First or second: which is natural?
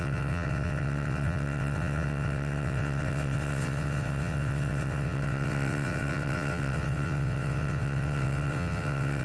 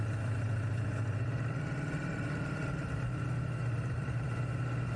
second